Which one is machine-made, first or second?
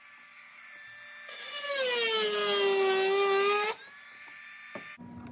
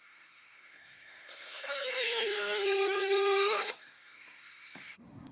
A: second